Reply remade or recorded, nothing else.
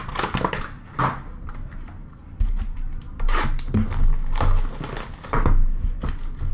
recorded